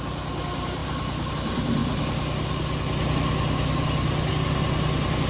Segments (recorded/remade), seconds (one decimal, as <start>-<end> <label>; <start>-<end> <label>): 0.0-5.3 recorded